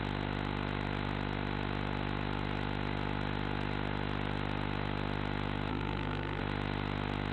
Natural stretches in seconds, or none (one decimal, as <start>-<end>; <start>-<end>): 0.0-5.7; 6.4-7.3